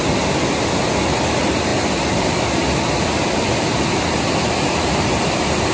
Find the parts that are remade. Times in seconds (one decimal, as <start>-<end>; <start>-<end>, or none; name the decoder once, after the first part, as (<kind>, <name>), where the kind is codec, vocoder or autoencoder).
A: none